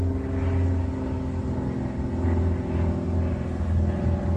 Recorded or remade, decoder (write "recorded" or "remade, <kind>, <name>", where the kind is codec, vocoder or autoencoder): recorded